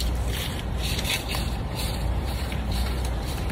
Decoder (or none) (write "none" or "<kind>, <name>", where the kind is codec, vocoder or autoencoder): vocoder, BigVGAN v2